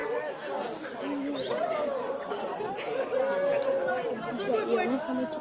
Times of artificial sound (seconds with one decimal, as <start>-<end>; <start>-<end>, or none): none